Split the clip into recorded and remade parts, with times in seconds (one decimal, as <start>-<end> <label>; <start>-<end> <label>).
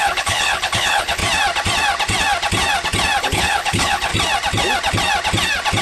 0.0-1.2 remade; 1.2-3.2 recorded; 3.2-4.1 remade; 4.1-5.8 recorded